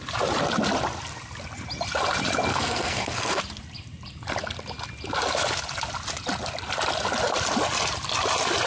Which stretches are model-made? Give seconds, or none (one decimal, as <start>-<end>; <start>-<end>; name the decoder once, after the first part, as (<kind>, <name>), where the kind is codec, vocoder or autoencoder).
2.5-3.4 (codec, SNAC)